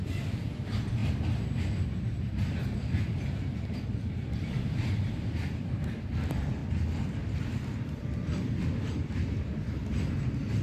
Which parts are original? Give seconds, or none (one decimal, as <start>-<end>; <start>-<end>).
1.0-3.8; 6.6-7.1